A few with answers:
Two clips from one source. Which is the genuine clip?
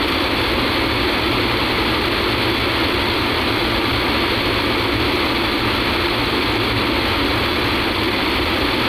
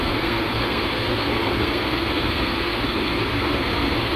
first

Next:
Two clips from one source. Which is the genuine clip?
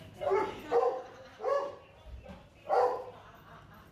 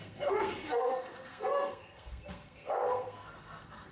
first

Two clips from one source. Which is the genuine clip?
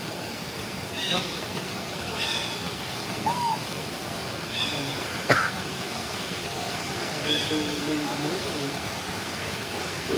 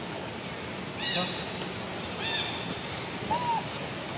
second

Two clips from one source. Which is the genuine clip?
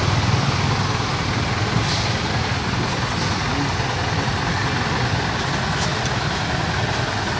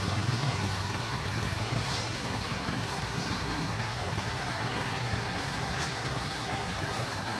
first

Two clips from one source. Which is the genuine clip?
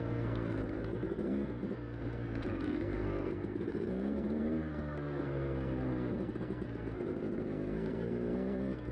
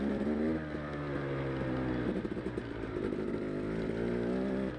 second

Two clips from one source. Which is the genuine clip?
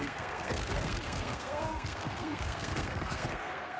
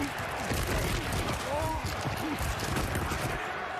second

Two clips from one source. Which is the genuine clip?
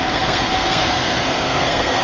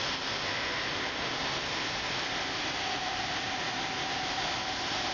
second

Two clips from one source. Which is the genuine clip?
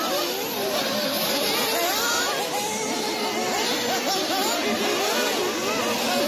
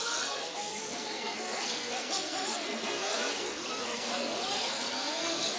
first